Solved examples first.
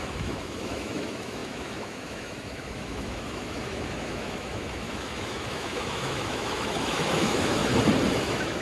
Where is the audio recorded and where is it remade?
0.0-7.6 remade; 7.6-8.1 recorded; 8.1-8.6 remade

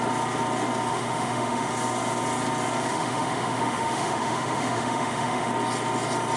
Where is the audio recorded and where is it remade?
0.0-0.9 recorded; 0.9-1.7 remade; 1.7-2.9 recorded; 2.9-5.5 remade; 5.5-6.4 recorded

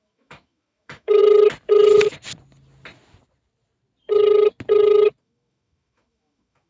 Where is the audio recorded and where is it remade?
0.0-1.2 remade; 1.2-5.2 recorded; 5.2-6.7 remade